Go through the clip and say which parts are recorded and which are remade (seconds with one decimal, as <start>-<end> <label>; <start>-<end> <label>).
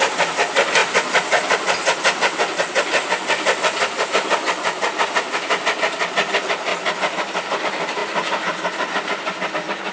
0.0-9.9 recorded